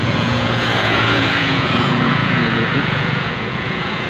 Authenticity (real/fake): fake